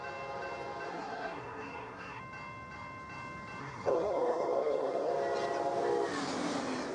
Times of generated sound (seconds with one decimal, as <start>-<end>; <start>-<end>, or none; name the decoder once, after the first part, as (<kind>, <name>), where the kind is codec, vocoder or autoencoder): 0.9-2.2 (codec, SNAC); 3.6-5.1